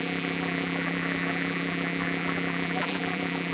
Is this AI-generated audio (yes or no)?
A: yes